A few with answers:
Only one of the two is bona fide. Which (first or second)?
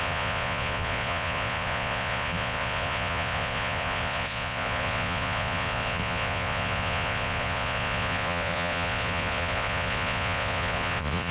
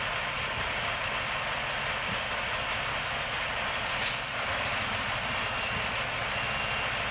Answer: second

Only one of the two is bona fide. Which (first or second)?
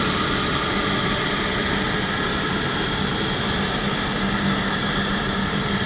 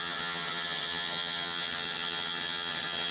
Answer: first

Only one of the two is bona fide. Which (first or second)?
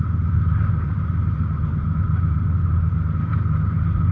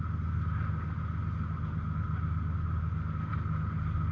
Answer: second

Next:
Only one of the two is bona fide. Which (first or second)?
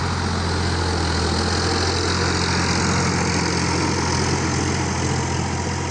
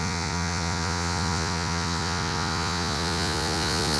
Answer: first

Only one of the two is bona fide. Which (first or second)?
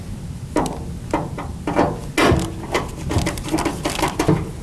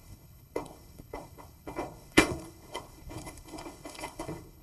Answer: first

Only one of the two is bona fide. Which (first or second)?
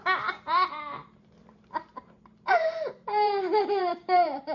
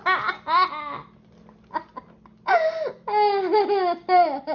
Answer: second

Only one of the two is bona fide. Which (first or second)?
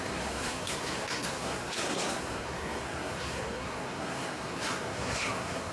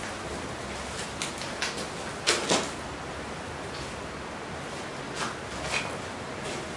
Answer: second